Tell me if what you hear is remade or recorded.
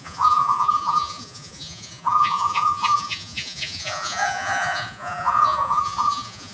remade